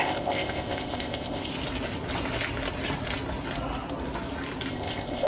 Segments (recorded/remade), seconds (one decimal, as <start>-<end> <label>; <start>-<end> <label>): 0.0-1.5 remade; 1.5-4.7 recorded; 4.7-5.3 remade